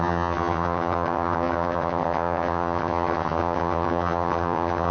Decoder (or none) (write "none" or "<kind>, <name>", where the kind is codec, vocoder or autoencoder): vocoder, HiFi-GAN